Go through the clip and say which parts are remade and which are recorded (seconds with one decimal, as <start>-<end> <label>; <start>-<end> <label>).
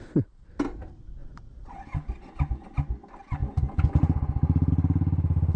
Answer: 0.0-1.2 recorded; 1.2-1.8 remade; 1.8-5.6 recorded